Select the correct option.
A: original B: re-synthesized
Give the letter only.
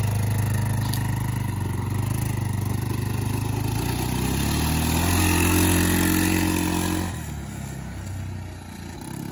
A